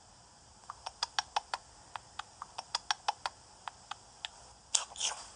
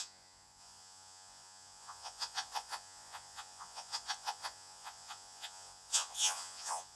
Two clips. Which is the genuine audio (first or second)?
first